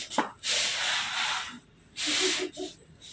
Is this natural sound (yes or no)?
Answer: yes